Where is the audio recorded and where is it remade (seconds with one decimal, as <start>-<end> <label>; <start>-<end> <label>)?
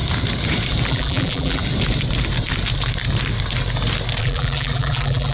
0.0-0.9 recorded; 0.9-1.6 remade; 1.6-4.2 recorded; 4.2-5.3 remade